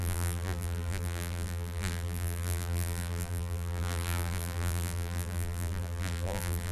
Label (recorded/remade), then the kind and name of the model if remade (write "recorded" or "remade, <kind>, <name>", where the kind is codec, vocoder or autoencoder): remade, vocoder, BigVGAN v2